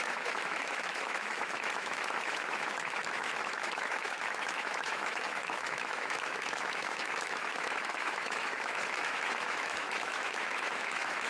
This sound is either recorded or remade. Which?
remade